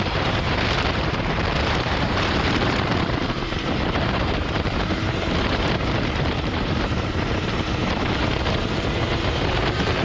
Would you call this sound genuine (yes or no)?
no